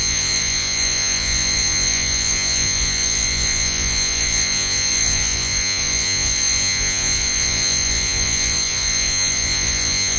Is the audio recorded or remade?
remade